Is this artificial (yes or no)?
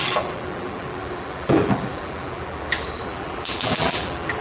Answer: yes